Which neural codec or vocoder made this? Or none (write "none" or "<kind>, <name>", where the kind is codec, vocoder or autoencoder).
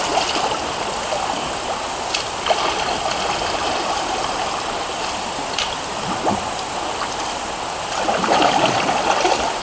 none